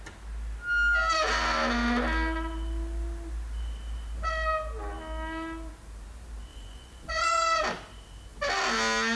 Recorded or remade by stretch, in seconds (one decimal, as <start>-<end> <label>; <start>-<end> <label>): 0.0-6.5 recorded; 6.5-7.6 remade; 7.6-9.2 recorded